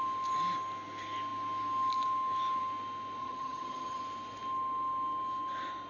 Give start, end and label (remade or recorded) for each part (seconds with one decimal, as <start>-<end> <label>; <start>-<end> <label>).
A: 0.0-3.2 recorded; 3.2-4.0 remade; 4.0-5.9 recorded